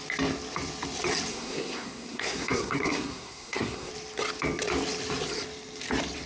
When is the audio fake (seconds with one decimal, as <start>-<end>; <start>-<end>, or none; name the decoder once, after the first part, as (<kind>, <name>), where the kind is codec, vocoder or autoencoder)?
1.3-3.9 (codec, SNAC)